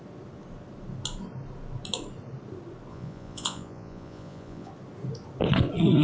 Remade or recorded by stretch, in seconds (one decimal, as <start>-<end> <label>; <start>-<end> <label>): 0.0-2.9 recorded; 2.9-4.7 remade; 4.7-6.0 recorded